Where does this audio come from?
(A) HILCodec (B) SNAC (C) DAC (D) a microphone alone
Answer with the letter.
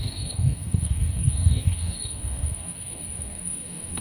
C